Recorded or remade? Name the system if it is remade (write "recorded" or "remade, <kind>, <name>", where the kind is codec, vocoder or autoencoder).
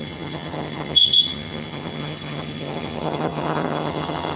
remade, vocoder, HiFi-GAN